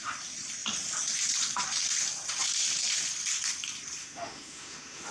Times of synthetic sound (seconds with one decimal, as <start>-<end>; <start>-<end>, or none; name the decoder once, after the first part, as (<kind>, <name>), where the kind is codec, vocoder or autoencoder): 4.0-5.1 (autoencoder, DAC-VAE)